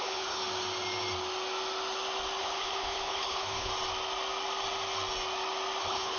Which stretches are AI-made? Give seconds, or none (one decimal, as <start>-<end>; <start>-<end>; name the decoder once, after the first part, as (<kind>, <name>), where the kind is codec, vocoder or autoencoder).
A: 0.0-0.4 (codec, HILCodec); 2.4-3.7; 5.8-6.2